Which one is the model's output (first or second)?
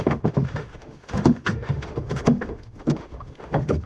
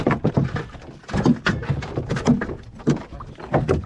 first